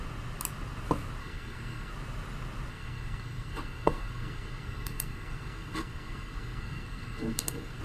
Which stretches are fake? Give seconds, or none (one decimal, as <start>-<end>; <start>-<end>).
1.2-1.9; 2.7-7.8

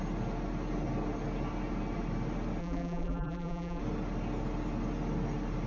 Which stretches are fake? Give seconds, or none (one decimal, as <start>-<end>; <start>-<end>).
2.6-3.8

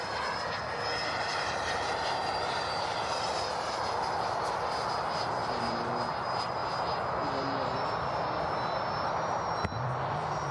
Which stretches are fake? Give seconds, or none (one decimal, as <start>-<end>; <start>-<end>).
1.3-3.8; 5.4-5.9

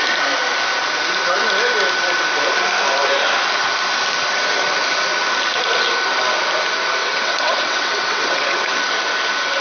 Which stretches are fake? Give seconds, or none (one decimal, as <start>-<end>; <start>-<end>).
7.0-8.7

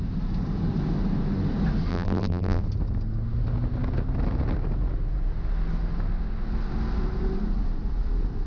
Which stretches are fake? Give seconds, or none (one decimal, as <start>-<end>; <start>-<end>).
1.9-2.6